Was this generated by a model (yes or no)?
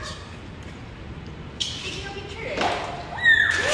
no